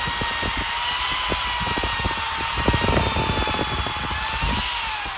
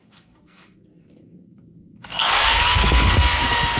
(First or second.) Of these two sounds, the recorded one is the first